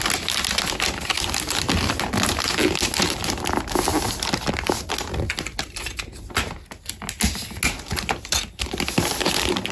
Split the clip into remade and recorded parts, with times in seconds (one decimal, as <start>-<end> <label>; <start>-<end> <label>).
0.0-9.7 recorded